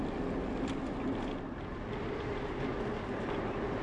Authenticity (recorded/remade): recorded